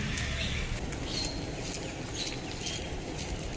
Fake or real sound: real